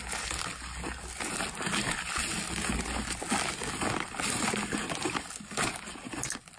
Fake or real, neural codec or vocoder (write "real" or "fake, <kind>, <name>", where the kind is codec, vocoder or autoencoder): real